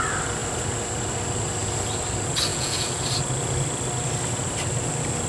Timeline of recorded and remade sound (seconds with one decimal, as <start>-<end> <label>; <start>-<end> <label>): 0.0-2.5 recorded; 2.5-3.0 remade; 3.0-5.3 recorded